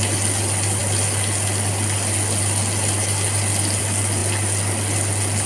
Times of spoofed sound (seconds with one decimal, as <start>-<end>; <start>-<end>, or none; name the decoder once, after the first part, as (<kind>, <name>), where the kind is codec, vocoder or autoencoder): none